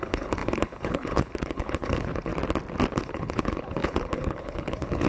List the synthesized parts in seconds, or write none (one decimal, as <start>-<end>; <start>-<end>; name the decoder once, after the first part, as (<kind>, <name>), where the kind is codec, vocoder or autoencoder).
0.0-2.3 (codec, HILCodec); 2.9-5.1